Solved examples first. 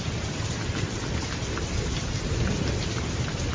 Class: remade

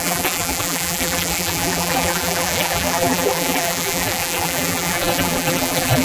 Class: remade